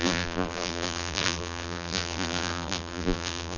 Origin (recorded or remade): remade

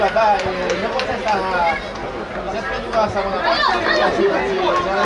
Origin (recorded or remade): recorded